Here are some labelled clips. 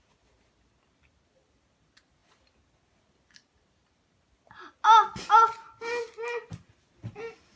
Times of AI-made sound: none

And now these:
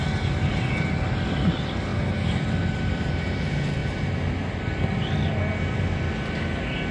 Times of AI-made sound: none